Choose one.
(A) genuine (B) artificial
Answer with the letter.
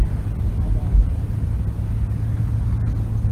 A